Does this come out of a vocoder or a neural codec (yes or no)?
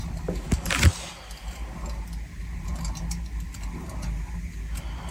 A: no